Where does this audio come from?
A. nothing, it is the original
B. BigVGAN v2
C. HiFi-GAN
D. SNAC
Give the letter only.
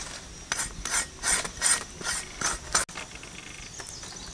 A